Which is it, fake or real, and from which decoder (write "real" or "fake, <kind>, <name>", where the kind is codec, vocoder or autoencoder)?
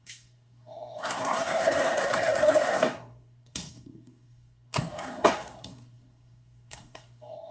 fake, codec, SNAC